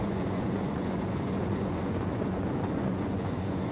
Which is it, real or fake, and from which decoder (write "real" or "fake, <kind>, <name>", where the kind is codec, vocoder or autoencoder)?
fake, vocoder, Vocos